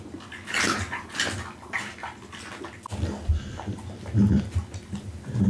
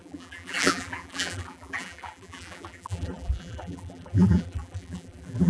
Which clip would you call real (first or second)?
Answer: first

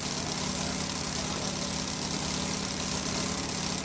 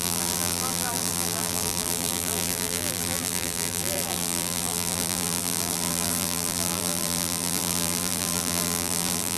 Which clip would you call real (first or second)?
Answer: first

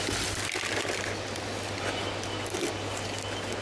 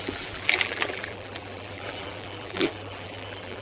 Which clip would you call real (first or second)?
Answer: first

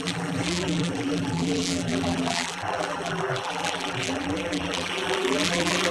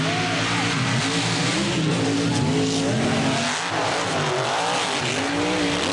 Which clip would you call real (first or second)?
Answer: second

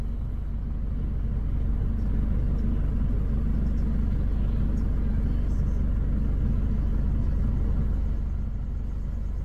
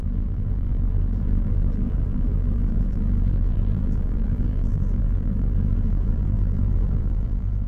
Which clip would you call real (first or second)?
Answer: first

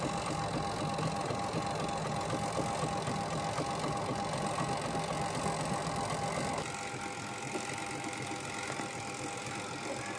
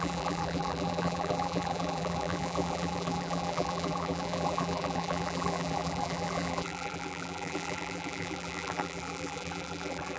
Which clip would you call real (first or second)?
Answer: first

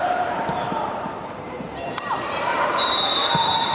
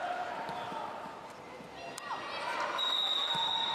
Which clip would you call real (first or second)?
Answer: second